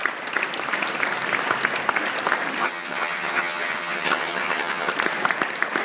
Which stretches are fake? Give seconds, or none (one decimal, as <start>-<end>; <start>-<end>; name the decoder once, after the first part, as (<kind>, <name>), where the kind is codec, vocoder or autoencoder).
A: 2.6-4.9 (vocoder, HiFi-GAN)